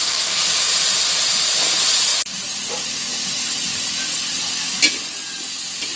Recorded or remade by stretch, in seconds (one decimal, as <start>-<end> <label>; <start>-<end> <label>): 0.0-0.7 remade; 0.7-6.0 recorded